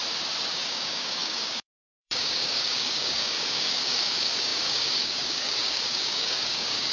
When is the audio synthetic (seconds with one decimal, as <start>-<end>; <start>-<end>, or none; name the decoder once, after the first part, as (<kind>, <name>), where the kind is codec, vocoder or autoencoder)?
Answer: 0.5-6.9 (codec, DAC)